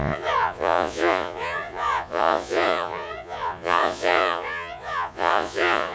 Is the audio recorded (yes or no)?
no